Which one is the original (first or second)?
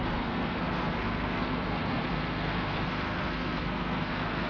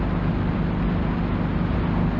second